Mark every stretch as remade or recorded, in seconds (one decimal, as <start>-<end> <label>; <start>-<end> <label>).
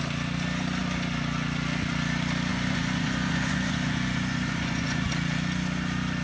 0.0-2.5 recorded; 2.5-5.1 remade; 5.1-6.2 recorded